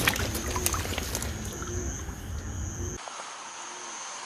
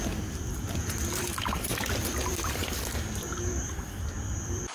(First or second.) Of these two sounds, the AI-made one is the second